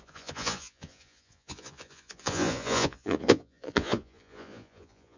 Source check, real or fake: fake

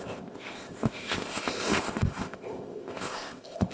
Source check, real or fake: fake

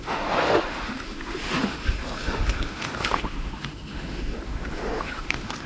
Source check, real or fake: fake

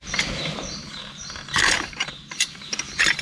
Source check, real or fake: fake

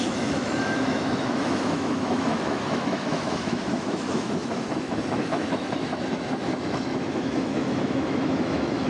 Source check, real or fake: fake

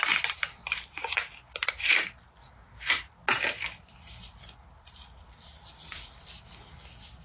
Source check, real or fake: real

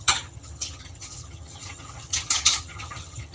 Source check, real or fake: fake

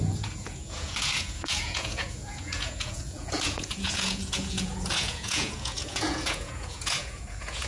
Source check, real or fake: fake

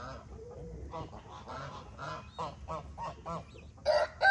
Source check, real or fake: real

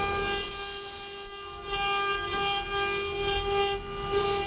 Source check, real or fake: real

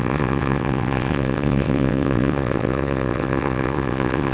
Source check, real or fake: fake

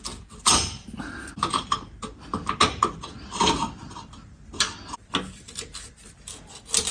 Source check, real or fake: real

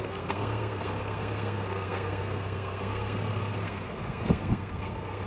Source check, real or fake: fake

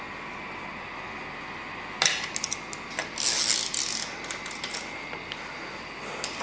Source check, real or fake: real